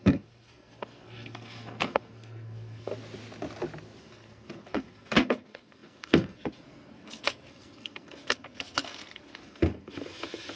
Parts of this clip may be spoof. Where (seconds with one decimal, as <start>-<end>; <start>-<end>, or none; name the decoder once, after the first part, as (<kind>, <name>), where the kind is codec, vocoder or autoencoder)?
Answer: 0.0-2.9 (codec, SNAC); 4.0-10.6